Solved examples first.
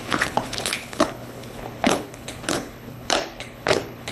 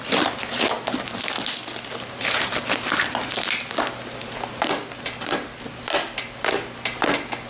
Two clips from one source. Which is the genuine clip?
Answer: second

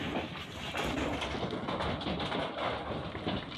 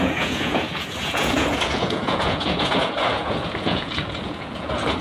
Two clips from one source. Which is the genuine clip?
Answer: first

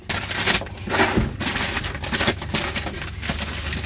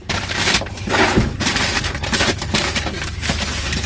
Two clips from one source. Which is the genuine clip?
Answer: first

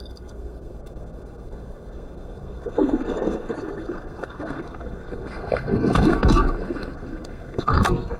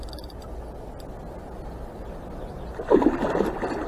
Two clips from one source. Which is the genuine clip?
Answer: second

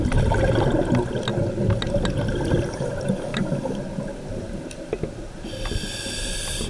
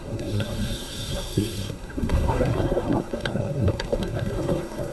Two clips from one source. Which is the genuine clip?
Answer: first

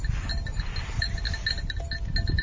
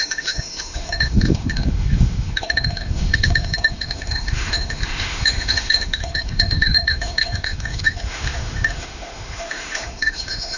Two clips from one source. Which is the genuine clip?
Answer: first